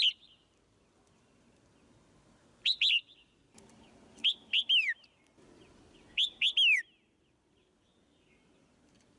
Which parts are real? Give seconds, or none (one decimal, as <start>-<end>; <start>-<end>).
0.0-9.2